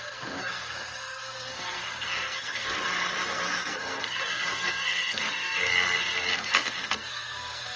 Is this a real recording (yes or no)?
no